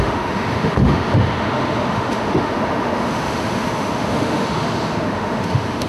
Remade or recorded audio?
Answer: remade